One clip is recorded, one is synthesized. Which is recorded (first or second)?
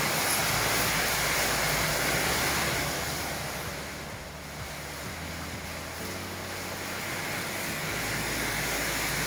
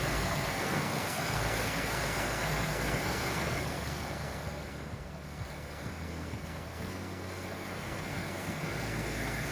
first